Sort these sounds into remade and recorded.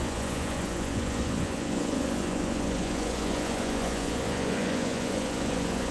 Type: remade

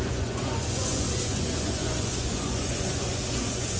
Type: remade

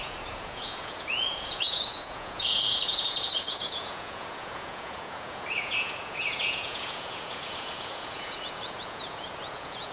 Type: remade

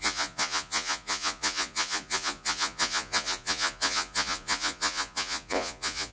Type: remade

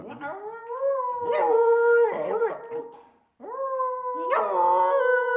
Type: recorded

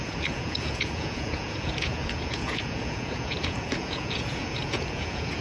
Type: remade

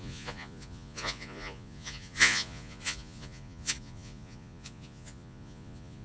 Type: remade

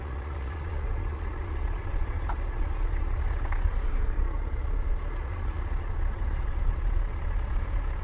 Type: remade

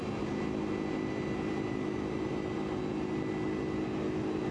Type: recorded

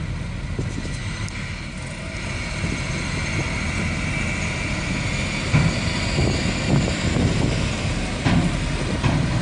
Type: recorded